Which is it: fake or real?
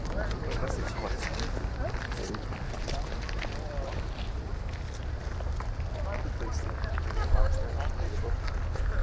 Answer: fake